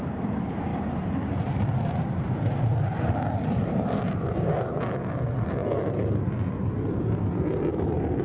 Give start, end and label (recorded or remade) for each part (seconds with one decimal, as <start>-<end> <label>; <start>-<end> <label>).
0.0-0.7 recorded; 0.7-4.8 remade; 4.8-8.2 recorded